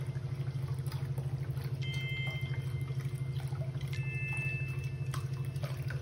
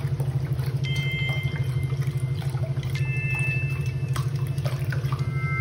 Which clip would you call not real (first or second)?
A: second